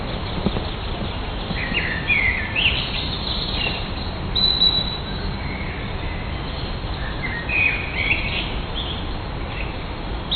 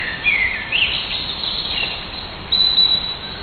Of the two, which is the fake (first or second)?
second